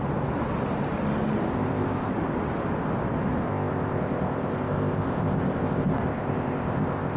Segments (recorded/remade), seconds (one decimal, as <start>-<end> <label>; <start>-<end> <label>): 0.0-1.5 recorded; 1.5-2.1 remade; 2.1-3.5 recorded; 3.5-7.2 remade